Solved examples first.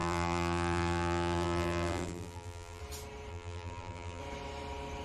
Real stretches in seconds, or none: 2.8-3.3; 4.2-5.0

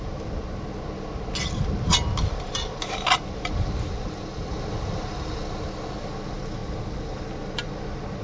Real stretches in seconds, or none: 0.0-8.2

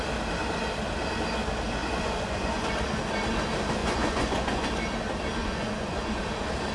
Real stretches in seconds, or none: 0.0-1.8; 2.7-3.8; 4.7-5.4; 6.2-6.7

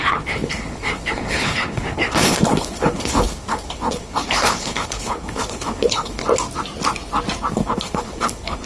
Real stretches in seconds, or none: 6.2-7.5

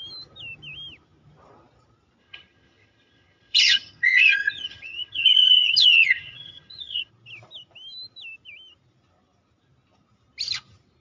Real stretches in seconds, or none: 0.0-2.2; 7.1-11.0